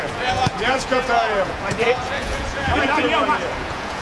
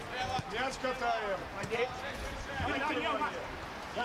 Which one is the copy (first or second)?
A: first